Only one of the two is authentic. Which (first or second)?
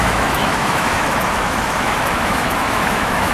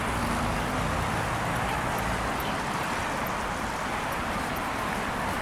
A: second